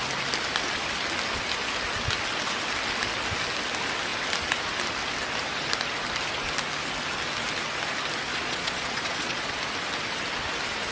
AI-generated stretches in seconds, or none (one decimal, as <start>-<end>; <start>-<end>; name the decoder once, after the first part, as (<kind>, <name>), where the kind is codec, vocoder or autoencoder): 8.3-9.6 (vocoder, Vocos)